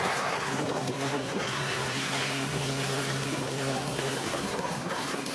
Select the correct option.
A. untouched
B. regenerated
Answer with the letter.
B